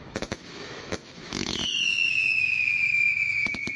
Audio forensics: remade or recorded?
remade